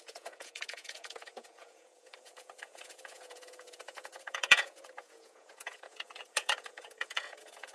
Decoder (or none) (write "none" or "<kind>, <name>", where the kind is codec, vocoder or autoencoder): vocoder, Vocos